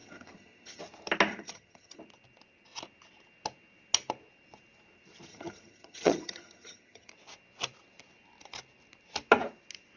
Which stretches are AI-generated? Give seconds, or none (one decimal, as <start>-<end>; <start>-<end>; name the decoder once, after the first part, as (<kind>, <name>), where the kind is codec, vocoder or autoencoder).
0.0-0.8 (vocoder, HiFi-GAN); 1.3-2.0; 5.3-7.1

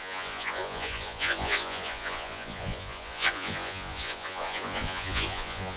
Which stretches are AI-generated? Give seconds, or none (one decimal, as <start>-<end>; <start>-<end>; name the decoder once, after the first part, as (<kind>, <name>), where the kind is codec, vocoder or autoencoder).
0.0-5.8 (vocoder, Vocos)